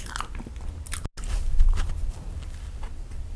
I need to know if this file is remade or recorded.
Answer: recorded